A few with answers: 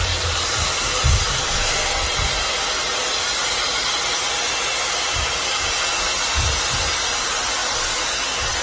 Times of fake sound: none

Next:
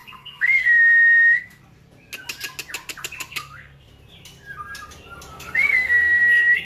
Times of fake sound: 0.0-1.6 (codec, SNAC); 3.3-3.9; 5.3-6.6